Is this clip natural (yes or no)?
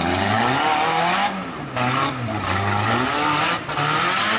yes